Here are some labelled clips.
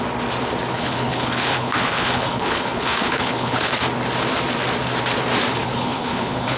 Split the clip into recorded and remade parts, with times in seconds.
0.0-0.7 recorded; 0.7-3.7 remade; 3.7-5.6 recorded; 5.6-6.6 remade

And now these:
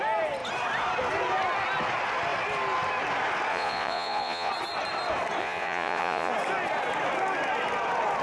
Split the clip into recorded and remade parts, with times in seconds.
0.0-3.5 recorded; 3.5-4.5 remade; 4.5-5.4 recorded; 5.4-6.3 remade; 6.3-8.2 recorded

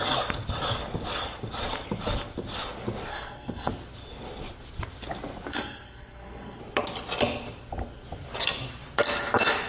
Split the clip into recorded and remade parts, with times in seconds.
0.0-3.1 recorded; 3.1-3.7 remade; 3.7-5.5 recorded; 5.5-6.6 remade; 6.6-9.7 recorded

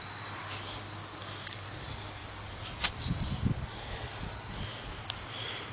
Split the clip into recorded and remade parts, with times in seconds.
0.0-5.7 recorded